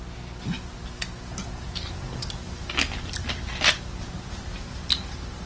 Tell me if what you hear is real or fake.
real